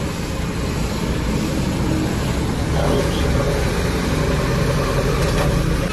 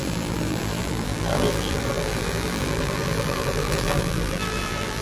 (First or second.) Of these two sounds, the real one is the first